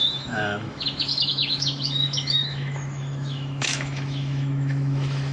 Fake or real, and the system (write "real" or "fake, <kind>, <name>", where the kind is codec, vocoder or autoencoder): fake, autoencoder, DAC-VAE